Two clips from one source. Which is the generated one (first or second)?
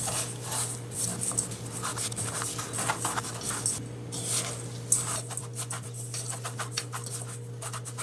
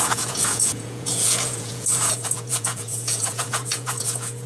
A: second